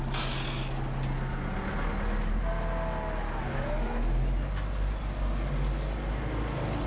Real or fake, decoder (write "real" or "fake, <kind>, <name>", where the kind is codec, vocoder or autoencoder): real